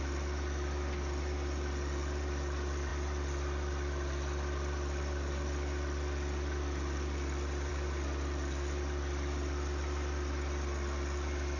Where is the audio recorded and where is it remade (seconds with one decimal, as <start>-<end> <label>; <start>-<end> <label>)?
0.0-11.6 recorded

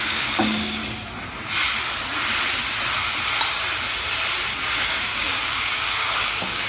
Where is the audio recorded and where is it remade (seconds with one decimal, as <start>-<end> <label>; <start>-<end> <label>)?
0.0-0.8 remade; 0.8-4.8 recorded; 4.8-6.7 remade

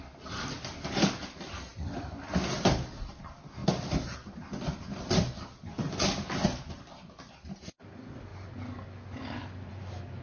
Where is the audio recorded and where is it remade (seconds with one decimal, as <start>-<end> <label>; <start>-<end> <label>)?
0.0-10.2 recorded

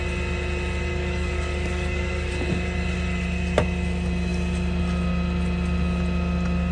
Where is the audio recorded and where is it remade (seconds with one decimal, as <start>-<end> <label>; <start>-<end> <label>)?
0.0-0.9 recorded; 0.9-2.3 remade; 2.3-6.7 recorded